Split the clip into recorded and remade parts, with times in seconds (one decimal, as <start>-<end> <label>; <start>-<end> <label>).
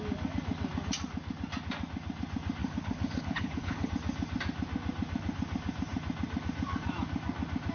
0.0-2.6 recorded; 2.6-3.9 remade; 3.9-7.7 recorded